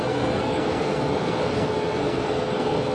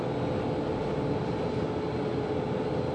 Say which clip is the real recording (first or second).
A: second